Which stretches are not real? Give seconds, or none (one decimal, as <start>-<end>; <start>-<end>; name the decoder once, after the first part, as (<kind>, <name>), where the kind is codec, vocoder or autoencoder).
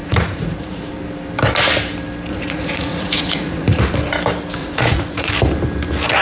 0.0-0.9 (vocoder, Vocos); 2.3-3.8; 4.6-5.3